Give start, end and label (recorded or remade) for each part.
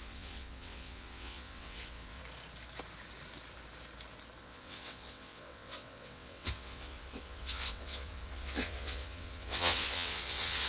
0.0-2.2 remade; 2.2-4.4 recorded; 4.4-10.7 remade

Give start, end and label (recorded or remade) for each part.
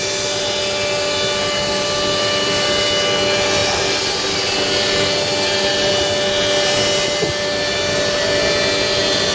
0.0-9.3 recorded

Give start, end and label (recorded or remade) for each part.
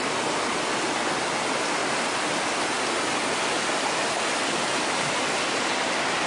0.0-6.3 recorded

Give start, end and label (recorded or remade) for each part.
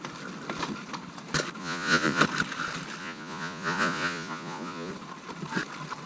0.0-1.6 recorded; 1.6-2.2 remade; 2.2-3.0 recorded; 3.0-4.9 remade; 4.9-6.1 recorded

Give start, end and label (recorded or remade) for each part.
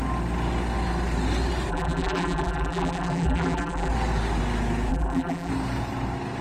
0.0-1.7 recorded; 1.7-3.9 remade; 3.9-4.9 recorded; 4.9-5.5 remade; 5.5-6.4 recorded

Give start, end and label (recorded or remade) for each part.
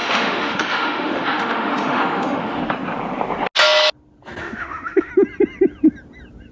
0.0-2.6 remade; 2.6-4.4 recorded; 4.4-5.1 remade; 5.1-6.5 recorded